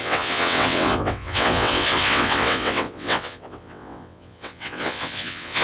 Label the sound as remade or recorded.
remade